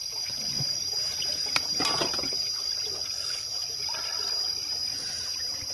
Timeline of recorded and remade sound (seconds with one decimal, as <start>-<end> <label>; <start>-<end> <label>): 0.0-2.5 remade; 2.5-4.5 recorded; 4.5-5.7 remade